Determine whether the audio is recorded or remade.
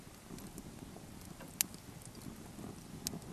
recorded